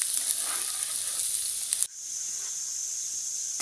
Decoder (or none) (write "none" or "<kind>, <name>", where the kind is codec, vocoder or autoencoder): none